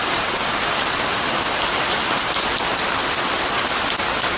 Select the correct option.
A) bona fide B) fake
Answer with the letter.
A